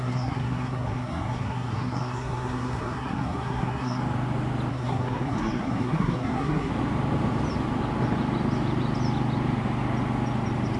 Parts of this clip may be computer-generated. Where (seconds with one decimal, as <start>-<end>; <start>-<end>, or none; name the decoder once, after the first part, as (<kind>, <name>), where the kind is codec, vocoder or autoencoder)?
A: 0.0-4.0 (codec, SNAC); 4.7-6.7